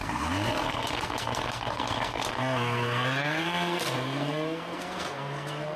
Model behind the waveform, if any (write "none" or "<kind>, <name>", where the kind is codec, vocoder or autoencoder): codec, SNAC